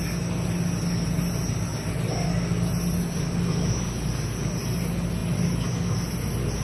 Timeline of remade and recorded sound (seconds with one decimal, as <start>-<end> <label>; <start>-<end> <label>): 0.0-6.6 recorded